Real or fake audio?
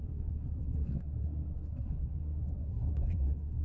fake